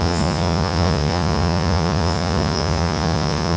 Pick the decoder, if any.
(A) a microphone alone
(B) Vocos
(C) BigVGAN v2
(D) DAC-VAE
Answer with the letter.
B